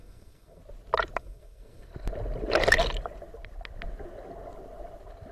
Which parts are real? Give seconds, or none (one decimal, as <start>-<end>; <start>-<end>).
0.6-1.2; 1.9-5.3